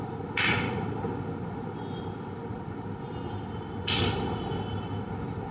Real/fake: real